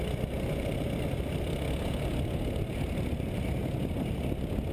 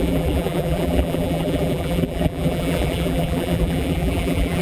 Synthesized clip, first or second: second